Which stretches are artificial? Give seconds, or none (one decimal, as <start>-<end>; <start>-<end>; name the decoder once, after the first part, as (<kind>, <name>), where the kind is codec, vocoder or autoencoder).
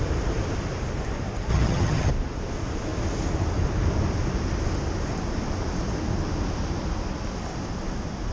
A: 1.5-2.1 (vocoder, HiFi-GAN)